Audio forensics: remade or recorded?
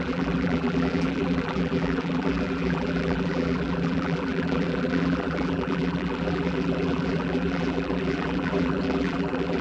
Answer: remade